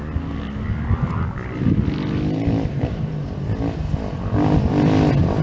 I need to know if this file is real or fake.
real